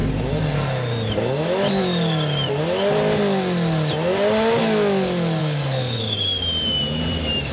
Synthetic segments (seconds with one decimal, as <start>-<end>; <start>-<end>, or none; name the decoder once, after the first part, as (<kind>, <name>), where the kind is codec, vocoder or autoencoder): 5.4-6.0 (codec, SNAC)